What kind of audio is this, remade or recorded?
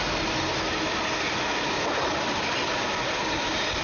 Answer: recorded